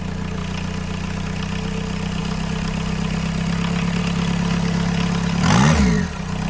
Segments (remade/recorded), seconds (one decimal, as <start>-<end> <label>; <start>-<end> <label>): 0.0-6.5 recorded